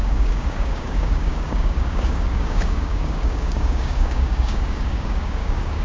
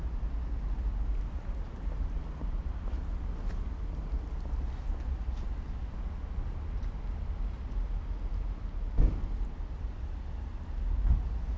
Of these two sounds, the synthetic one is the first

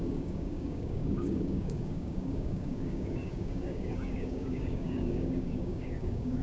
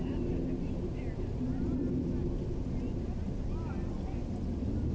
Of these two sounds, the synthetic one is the first